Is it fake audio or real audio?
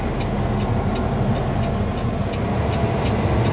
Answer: real